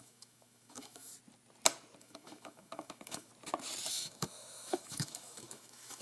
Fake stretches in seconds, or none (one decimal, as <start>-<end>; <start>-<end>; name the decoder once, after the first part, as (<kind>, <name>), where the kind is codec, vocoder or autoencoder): 0.0-1.1 (autoencoder, DAC-VAE); 2.0-3.3; 3.9-6.0